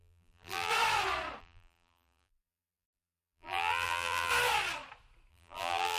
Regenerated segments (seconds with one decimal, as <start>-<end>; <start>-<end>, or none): 0.0-0.7; 1.4-4.3; 5.3-6.0